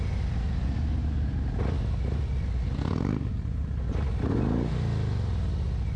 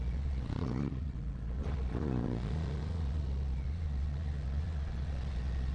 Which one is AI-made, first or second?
second